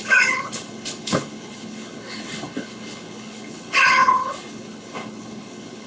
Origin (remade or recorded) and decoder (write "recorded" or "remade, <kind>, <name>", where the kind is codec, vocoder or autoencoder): remade, codec, HILCodec